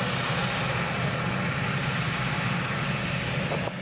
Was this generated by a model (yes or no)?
no